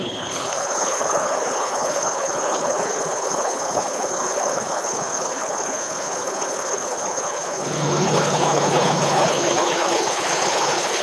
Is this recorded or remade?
remade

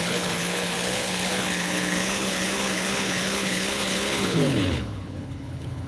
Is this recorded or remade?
remade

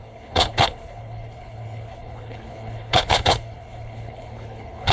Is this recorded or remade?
remade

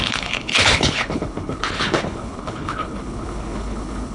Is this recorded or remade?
remade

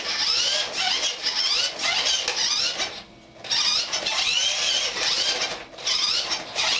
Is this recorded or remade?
recorded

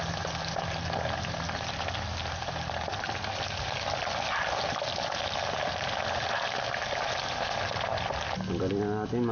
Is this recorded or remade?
recorded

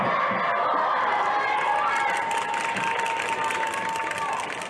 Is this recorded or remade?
recorded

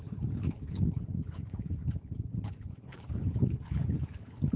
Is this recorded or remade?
remade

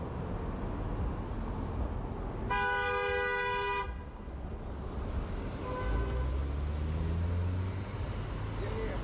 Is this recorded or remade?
recorded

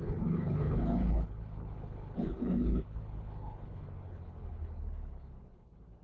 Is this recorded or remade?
remade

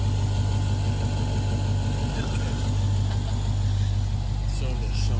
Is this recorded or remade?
recorded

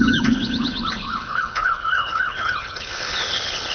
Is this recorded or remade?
remade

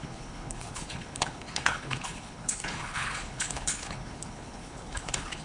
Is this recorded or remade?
remade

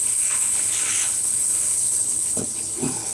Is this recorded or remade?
remade